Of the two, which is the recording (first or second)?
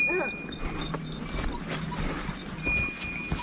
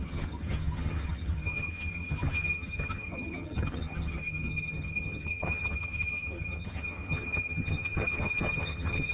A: first